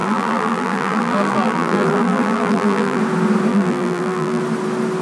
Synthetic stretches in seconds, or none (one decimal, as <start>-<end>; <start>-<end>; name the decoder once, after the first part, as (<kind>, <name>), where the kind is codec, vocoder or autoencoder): 0.0-3.0 (vocoder, BigVGAN v2); 3.5-4.4